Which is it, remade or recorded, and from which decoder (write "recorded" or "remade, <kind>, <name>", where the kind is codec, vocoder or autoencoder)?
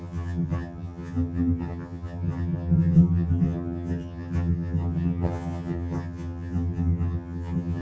remade, vocoder, HiFi-GAN